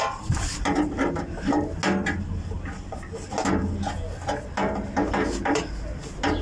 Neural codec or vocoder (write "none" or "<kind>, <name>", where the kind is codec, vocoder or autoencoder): none